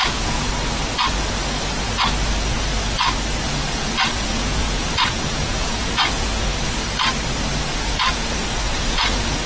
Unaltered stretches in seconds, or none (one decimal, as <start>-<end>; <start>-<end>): 0.5-3.4; 6.5-8.1